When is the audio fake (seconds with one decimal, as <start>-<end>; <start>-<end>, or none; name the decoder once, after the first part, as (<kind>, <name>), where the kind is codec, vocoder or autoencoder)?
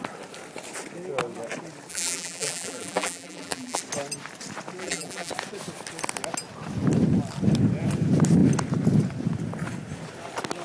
1.9-3.8 (vocoder, BigVGAN v2); 4.8-5.3